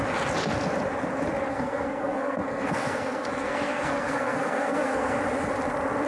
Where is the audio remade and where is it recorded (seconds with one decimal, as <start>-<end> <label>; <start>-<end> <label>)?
0.0-1.5 recorded; 1.5-5.2 remade; 5.2-6.1 recorded